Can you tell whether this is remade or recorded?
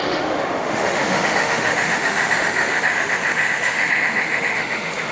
remade